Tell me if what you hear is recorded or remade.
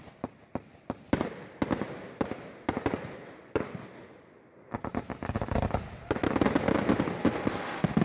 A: recorded